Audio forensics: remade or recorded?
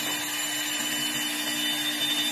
recorded